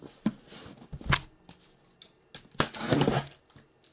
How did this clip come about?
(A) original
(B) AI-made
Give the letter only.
A